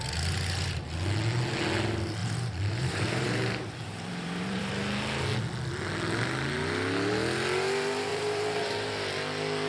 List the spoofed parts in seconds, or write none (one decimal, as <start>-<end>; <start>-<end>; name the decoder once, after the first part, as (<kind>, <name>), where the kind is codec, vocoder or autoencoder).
2.2-4.7 (vocoder, BigVGAN v2); 8.1-8.9